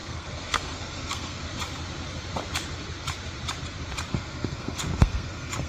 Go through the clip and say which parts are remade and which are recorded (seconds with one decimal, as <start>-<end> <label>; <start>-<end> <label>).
0.0-1.4 remade; 1.4-4.1 recorded; 4.1-5.7 remade